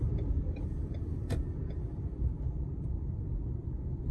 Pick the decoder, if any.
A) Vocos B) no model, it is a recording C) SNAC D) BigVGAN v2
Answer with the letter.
D